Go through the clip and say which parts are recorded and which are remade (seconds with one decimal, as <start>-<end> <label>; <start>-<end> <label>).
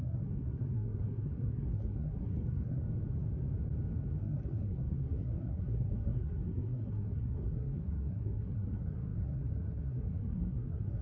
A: 0.0-2.8 remade; 2.8-4.2 recorded; 4.2-11.0 remade